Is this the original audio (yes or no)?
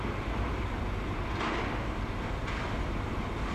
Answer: yes